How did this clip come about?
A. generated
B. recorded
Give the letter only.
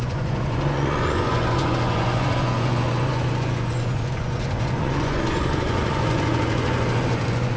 A